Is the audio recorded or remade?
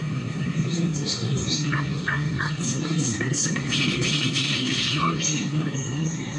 remade